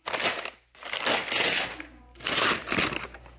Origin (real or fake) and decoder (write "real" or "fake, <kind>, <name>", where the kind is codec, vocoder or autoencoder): real